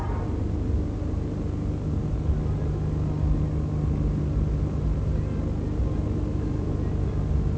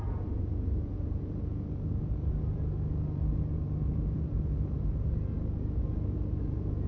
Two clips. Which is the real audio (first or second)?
first